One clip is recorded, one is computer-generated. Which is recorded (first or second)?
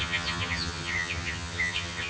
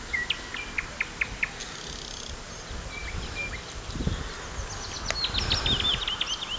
second